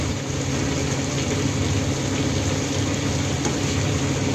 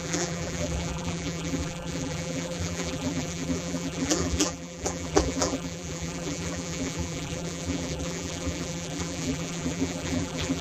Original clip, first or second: first